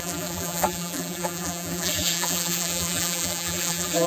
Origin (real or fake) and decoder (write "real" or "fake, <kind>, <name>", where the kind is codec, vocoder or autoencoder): fake, vocoder, BigVGAN v2